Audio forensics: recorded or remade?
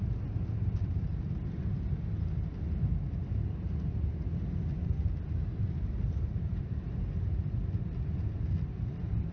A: recorded